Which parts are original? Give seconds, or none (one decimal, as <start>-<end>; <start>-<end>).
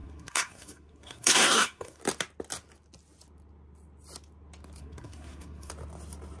2.0-4.8; 5.7-6.4